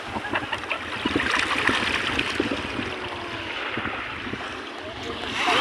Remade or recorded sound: recorded